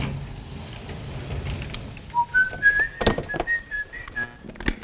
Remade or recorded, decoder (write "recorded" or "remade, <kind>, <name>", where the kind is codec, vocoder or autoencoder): recorded